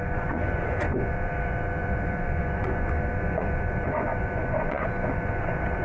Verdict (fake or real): fake